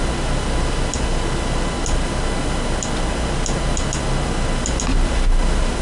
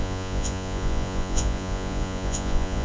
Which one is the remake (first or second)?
second